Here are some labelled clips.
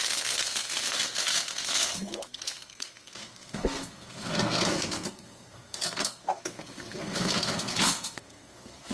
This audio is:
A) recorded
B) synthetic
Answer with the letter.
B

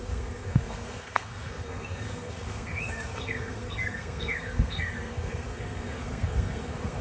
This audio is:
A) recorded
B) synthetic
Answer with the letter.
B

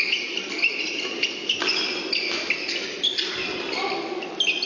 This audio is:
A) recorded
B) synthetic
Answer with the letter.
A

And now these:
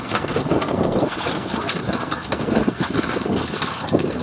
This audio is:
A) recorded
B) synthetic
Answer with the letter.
B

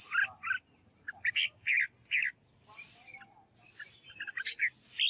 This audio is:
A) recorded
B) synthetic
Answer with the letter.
A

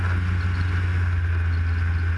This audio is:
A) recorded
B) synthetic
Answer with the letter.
A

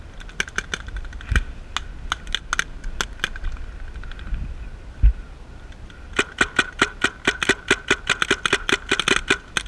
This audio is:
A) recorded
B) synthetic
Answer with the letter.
A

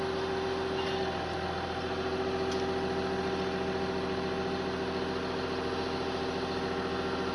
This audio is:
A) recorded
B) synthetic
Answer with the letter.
A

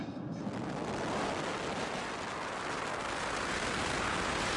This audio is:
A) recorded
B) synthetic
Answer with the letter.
A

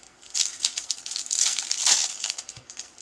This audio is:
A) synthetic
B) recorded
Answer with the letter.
A